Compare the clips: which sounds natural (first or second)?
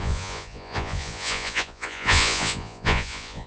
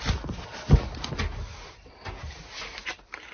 second